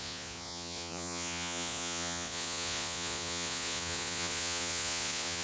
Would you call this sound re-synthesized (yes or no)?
yes